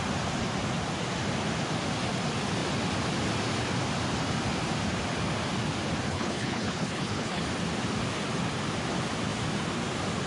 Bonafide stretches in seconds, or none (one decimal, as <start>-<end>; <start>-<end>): 0.0-6.1; 7.4-10.3